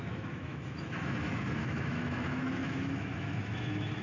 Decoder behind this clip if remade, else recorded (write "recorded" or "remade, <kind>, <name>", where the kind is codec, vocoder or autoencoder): remade, autoencoder, DAC-VAE